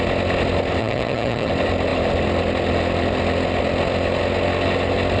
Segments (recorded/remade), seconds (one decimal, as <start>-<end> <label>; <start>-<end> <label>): 0.0-0.8 recorded; 0.8-1.5 remade; 1.5-5.2 recorded